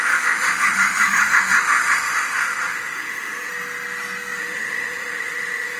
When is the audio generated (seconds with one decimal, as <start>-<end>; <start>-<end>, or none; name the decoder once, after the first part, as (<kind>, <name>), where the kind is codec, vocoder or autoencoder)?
0.0-3.5 (autoencoder, DAC-VAE); 4.4-5.8